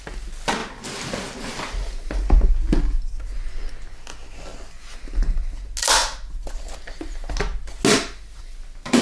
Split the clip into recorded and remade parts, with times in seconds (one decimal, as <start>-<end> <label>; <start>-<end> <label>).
0.0-9.0 recorded